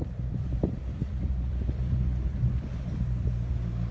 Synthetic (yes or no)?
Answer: yes